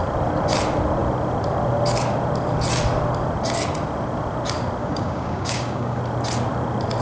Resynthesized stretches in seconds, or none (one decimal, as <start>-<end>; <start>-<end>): 4.8-6.0